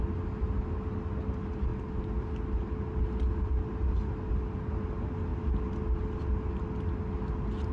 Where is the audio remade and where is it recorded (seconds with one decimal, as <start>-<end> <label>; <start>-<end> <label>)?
0.0-7.7 recorded